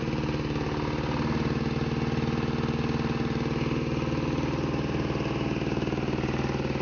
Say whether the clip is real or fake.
real